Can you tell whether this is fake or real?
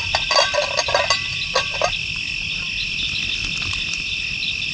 real